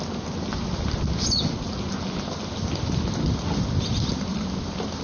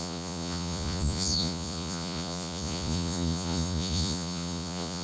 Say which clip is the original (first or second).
first